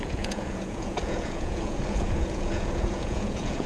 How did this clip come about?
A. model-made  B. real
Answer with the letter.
A